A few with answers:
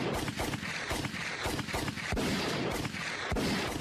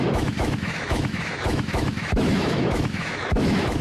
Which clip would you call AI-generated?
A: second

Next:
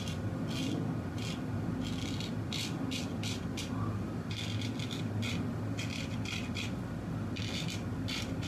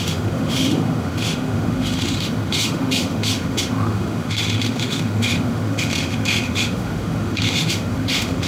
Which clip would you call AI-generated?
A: second